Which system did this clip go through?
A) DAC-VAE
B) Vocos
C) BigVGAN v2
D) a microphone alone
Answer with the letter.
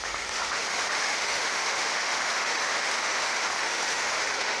A